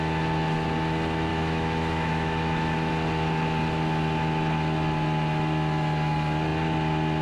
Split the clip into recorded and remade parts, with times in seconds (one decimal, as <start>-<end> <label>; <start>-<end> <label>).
0.0-1.3 recorded; 1.3-2.9 remade; 2.9-7.2 recorded